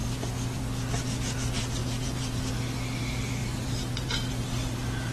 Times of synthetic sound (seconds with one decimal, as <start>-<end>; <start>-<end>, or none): 1.8-2.4; 3.4-4.3